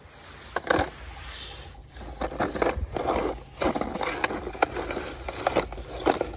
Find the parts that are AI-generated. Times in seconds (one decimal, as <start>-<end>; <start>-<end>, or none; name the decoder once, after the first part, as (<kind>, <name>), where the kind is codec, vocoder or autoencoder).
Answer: none